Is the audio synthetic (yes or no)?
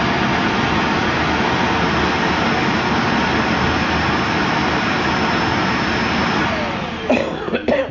no